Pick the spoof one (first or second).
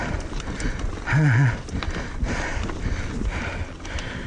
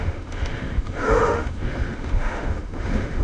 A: second